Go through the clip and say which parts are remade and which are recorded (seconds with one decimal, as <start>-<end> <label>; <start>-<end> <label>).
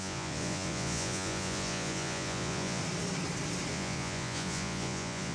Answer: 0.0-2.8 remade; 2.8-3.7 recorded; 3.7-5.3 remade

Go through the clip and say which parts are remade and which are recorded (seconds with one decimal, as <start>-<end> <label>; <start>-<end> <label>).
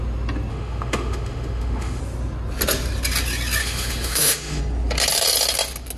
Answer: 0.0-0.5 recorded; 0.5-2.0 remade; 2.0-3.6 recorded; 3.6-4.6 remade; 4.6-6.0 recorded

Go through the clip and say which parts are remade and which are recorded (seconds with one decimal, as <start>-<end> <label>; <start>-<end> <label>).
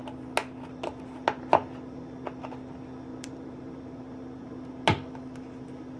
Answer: 0.0-3.1 recorded; 3.1-4.5 remade; 4.5-6.0 recorded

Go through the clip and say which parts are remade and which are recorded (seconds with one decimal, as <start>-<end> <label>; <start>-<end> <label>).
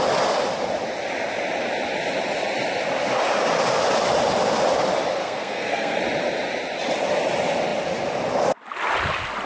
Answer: 0.0-5.2 recorded; 5.2-6.0 remade; 6.0-9.5 recorded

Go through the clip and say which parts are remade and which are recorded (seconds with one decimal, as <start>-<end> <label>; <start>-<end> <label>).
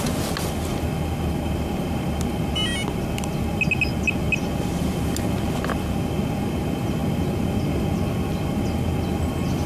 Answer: 0.0-9.7 recorded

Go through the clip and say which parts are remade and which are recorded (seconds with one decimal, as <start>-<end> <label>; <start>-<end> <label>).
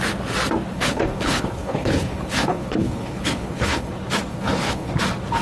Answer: 0.0-0.7 recorded; 0.7-3.9 remade; 3.9-4.3 recorded; 4.3-4.9 remade; 4.9-5.4 recorded